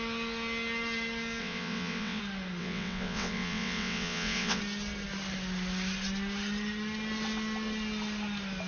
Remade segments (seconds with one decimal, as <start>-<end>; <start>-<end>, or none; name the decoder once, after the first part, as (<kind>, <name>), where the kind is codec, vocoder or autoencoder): 1.4-2.2 (vocoder, WaveNeXt); 2.6-4.6